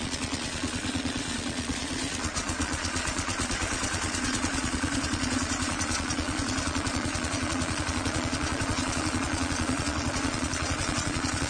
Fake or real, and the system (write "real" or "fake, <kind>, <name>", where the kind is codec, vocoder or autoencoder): fake, vocoder, Vocos